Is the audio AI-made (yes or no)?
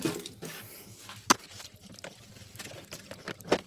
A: no